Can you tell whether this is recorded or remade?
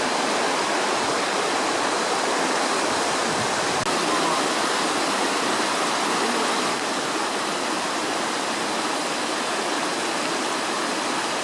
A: recorded